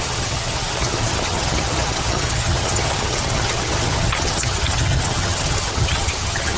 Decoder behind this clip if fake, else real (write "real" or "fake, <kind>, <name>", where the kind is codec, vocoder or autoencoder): fake, vocoder, HiFi-GAN